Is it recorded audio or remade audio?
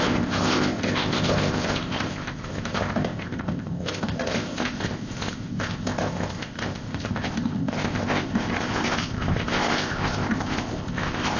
remade